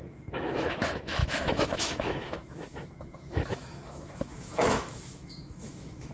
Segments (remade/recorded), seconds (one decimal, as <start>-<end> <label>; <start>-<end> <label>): 0.0-6.1 remade